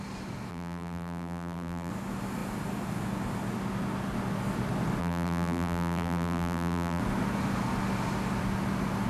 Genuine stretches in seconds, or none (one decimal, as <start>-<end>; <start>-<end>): 0.0-0.5; 1.9-5.0; 7.0-9.1